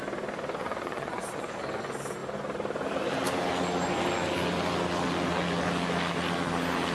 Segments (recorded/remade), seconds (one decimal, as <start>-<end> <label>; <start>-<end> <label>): 0.0-0.6 recorded; 0.6-1.6 remade; 1.6-6.9 recorded